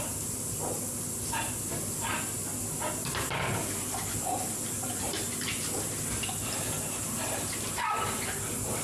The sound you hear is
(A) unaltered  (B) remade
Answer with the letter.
A